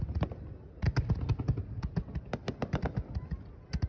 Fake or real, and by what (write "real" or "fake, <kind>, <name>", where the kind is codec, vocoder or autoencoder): real